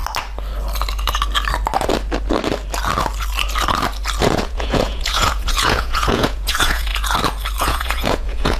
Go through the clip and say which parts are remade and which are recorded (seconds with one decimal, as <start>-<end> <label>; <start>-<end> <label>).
0.0-4.2 recorded; 4.2-6.9 remade; 6.9-7.6 recorded; 7.6-8.6 remade